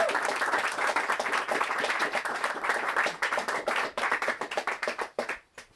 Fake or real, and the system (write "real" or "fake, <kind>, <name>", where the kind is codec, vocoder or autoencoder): fake, vocoder, BigVGAN v2